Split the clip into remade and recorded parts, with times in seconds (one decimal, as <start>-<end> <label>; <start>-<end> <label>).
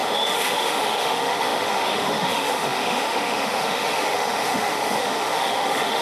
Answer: 0.0-6.0 remade